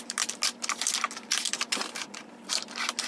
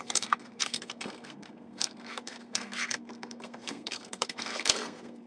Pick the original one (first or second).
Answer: first